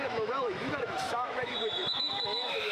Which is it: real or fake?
fake